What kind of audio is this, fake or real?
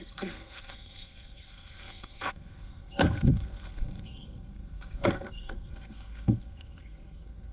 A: fake